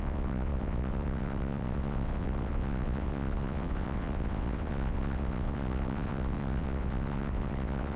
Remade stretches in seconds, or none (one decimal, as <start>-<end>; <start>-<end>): 0.0-8.0